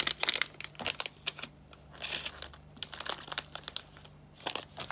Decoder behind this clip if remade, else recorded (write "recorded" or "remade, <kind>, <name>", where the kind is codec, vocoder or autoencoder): recorded